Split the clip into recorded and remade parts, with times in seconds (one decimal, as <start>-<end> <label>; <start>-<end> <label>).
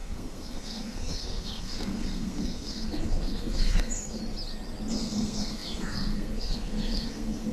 0.0-4.2 remade; 4.2-4.9 recorded; 4.9-7.5 remade